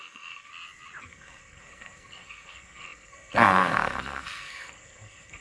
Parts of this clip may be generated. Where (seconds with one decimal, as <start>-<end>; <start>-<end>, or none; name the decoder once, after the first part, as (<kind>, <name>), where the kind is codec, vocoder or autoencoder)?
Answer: 0.0-0.5 (codec, SNAC); 1.0-5.4